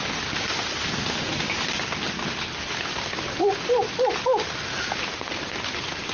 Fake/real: real